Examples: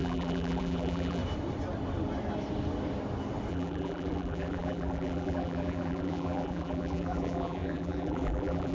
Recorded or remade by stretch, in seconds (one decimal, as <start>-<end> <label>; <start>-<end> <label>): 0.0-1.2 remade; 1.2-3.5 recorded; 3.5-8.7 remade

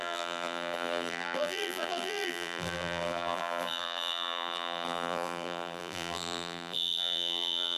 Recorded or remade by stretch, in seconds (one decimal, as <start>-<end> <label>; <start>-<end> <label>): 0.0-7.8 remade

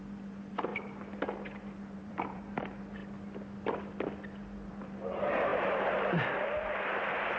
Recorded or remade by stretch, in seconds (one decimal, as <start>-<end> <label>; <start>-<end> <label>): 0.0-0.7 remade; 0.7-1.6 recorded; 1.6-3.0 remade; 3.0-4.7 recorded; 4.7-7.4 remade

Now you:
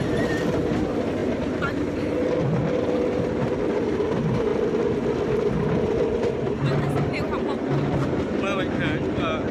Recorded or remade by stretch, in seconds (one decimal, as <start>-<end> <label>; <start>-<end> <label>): 0.0-9.5 recorded